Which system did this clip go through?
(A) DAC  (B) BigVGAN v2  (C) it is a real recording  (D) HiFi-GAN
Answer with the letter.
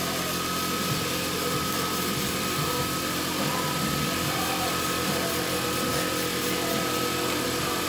C